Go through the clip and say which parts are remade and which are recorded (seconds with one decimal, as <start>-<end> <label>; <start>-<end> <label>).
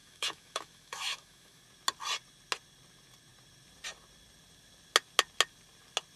0.0-1.6 remade; 1.6-6.2 recorded